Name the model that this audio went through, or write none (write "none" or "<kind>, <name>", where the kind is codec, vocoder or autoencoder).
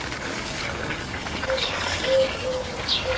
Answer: codec, DAC